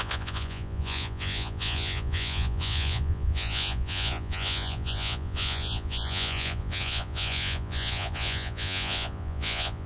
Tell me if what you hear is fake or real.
fake